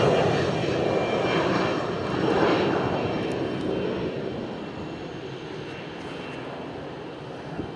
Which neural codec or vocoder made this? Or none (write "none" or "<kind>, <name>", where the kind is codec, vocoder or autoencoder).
none